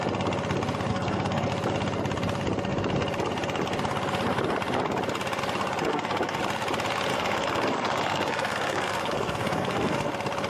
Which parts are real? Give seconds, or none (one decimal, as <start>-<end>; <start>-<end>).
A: 0.0-0.9; 1.5-5.9; 6.4-7.1; 10.1-10.5